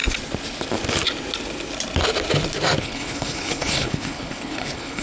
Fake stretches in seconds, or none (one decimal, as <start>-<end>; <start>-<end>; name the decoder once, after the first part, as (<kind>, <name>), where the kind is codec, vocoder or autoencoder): 2.8-5.0 (codec, HILCodec)